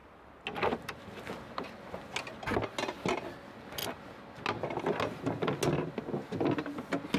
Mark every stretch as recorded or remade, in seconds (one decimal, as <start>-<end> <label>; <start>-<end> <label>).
0.0-7.2 recorded